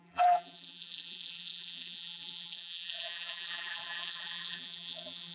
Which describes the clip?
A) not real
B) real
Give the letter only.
A